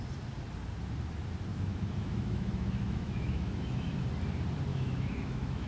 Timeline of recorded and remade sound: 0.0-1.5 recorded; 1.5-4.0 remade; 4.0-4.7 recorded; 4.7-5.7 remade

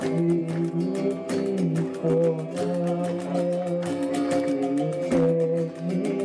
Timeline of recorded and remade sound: 0.0-6.2 recorded